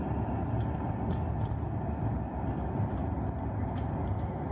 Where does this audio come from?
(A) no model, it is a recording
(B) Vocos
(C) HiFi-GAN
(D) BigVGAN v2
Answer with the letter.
A